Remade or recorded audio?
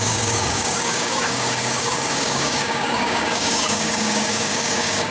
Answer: remade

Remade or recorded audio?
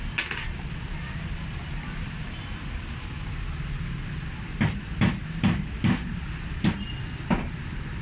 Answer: recorded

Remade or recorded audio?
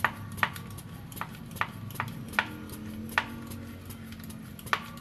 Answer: recorded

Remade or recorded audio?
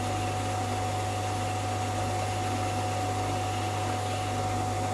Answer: recorded